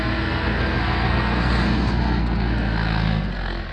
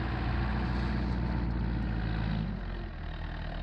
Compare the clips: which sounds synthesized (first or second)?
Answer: first